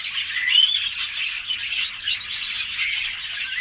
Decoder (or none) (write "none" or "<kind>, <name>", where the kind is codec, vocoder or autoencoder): none